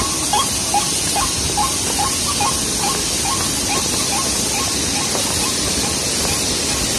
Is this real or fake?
real